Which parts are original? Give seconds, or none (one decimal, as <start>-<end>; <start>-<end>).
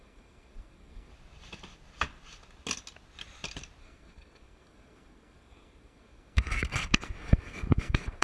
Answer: 1.1-3.8